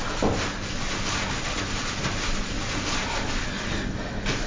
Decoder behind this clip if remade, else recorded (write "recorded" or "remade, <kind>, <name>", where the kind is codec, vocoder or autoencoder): remade, vocoder, BigVGAN v2